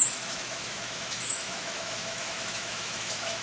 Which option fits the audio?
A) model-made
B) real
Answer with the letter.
A